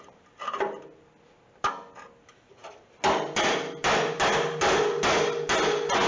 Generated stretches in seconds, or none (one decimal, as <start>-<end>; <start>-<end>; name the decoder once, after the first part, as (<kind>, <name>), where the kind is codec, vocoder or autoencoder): none